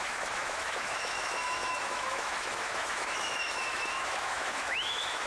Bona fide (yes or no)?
no